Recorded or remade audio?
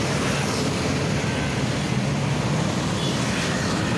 recorded